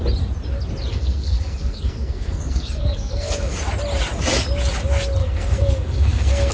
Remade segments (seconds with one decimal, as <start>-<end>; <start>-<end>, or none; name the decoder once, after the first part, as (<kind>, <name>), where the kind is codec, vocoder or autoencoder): 0.9-3.6 (codec, SNAC); 5.2-6.5